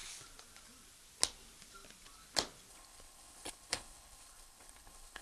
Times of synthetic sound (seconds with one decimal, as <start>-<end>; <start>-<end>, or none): 2.7-5.2